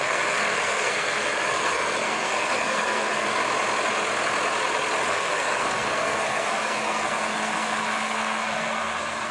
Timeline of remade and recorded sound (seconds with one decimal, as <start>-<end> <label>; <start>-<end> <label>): 0.0-3.4 remade; 3.4-5.1 recorded; 5.1-9.3 remade

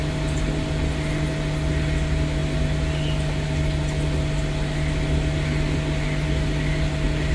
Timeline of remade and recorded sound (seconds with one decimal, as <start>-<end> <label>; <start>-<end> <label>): 0.0-7.3 recorded